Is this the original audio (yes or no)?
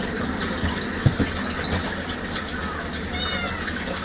yes